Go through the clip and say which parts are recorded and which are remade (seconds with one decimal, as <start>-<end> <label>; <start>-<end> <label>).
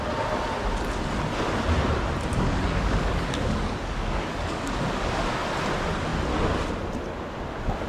0.0-2.3 recorded; 2.3-5.3 remade; 5.3-7.9 recorded